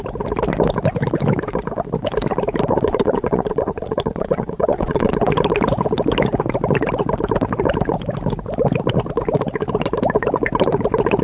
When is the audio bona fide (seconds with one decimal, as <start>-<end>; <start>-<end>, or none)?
0.0-2.7; 5.1-11.2